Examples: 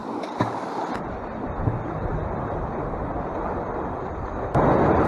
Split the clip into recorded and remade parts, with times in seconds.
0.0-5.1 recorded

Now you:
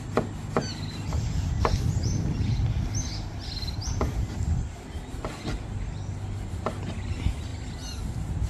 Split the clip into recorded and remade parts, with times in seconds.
0.0-8.5 recorded

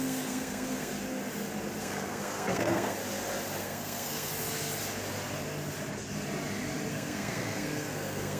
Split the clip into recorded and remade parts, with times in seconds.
0.0-0.9 remade; 0.9-1.8 recorded; 1.8-3.0 remade; 3.0-3.6 recorded; 3.6-4.3 remade; 4.3-6.9 recorded; 6.9-8.4 remade

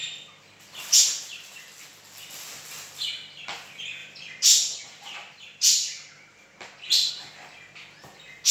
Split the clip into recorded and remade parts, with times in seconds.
0.0-4.0 recorded; 4.0-7.1 remade; 7.1-8.5 recorded

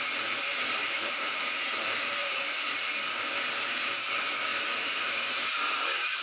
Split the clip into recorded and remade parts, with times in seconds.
0.0-0.5 recorded; 0.5-2.9 remade; 2.9-4.5 recorded; 4.5-5.3 remade; 5.3-6.2 recorded

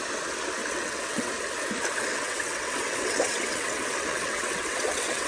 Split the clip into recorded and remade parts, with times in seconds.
0.0-0.6 recorded; 0.6-1.3 remade; 1.3-2.1 recorded; 2.1-5.3 remade

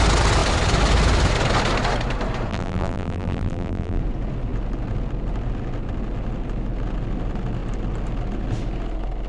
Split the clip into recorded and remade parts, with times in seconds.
0.0-2.5 recorded; 2.5-4.0 remade; 4.0-9.3 recorded